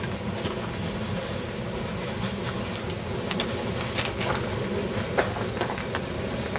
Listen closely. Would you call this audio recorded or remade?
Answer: recorded